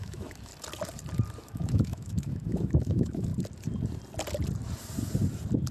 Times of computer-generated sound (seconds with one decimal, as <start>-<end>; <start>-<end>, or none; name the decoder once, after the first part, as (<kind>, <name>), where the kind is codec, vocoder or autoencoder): 0.0-0.5 (autoencoder, DAC-VAE); 1.4-3.3